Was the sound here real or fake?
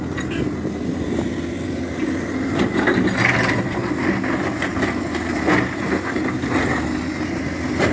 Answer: real